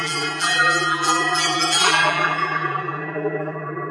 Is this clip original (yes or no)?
no